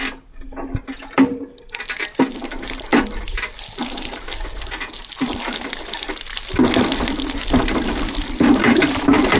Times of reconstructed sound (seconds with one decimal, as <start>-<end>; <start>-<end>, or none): none